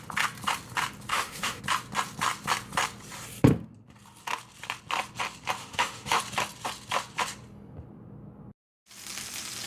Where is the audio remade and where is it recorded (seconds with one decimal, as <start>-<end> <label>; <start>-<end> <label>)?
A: 0.0-1.1 recorded; 1.1-1.6 remade; 1.6-5.6 recorded; 5.6-6.2 remade; 6.2-9.7 recorded